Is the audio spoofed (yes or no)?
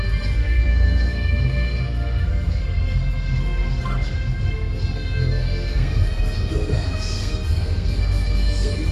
yes